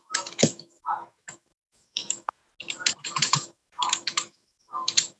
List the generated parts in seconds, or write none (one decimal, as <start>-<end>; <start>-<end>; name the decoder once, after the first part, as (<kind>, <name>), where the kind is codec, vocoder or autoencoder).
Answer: 0.0-2.4 (autoencoder, DAC-VAE); 3.0-5.2